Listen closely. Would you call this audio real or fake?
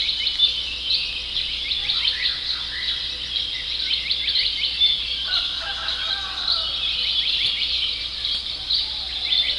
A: real